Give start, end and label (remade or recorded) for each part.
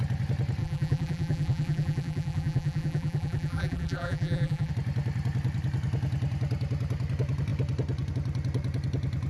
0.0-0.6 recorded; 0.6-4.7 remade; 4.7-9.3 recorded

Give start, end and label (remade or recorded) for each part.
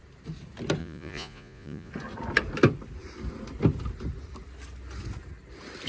0.0-0.8 recorded; 0.8-1.9 remade; 1.9-5.9 recorded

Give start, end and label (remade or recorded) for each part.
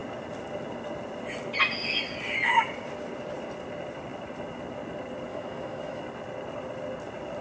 0.0-5.3 recorded; 5.3-6.0 remade; 6.0-7.4 recorded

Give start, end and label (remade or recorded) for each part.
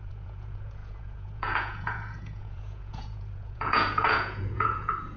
0.0-5.2 remade